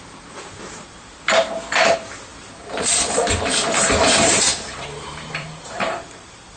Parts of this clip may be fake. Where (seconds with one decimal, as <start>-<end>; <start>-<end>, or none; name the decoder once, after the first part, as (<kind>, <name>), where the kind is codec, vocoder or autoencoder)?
0.0-6.6 (vocoder, BigVGAN v2)